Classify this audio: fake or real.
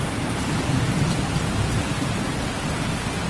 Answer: real